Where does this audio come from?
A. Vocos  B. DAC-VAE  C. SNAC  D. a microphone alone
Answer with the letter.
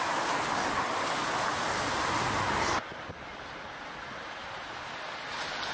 D